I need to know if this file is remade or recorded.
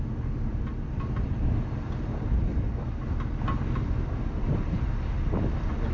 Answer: recorded